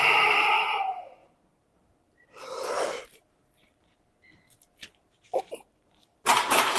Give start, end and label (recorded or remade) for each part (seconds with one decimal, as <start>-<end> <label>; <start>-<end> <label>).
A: 0.0-1.2 recorded; 1.2-4.3 remade; 4.3-4.9 recorded; 4.9-6.8 remade